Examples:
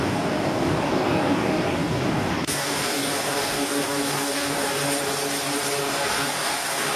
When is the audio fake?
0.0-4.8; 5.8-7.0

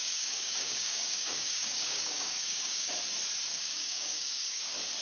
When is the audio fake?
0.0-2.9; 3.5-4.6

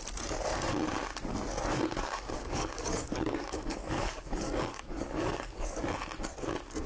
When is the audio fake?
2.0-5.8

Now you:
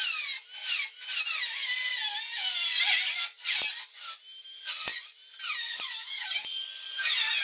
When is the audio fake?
5.6-6.3

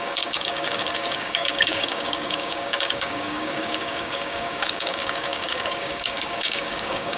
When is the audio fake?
0.0-7.2

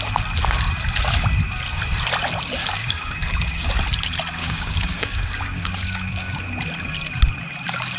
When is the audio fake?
2.6-3.7; 4.4-6.4